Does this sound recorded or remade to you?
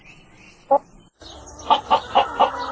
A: recorded